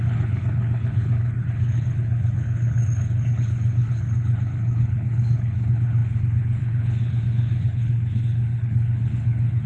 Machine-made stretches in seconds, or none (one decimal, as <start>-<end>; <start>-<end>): 0.0-9.7